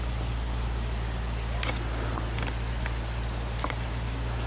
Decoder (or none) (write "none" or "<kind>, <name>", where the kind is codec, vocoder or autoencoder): none